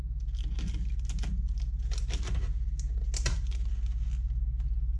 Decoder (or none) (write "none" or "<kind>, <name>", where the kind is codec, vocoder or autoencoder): none